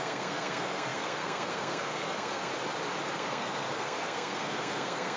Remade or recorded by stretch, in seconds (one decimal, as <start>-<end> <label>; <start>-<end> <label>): 0.0-2.5 remade; 2.5-3.1 recorded; 3.1-5.2 remade